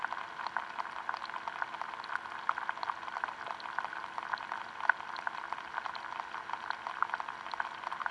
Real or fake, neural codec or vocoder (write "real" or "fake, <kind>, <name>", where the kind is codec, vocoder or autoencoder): real